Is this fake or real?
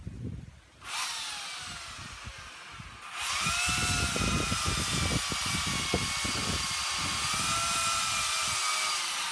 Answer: real